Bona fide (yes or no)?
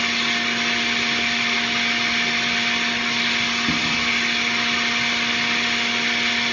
yes